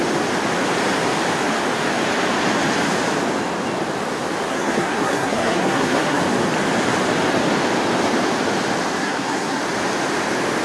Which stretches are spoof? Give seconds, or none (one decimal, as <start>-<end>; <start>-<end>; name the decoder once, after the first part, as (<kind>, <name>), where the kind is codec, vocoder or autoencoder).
4.5-6.2 (codec, SNAC); 9.0-9.6